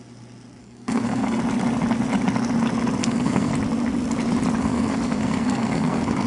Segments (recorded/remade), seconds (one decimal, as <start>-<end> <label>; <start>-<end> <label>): 0.0-0.6 recorded; 0.6-1.4 remade; 1.4-3.0 recorded; 3.0-3.5 remade; 3.5-4.6 recorded; 4.6-6.3 remade